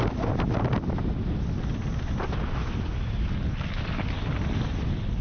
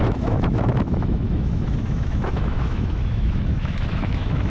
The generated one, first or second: second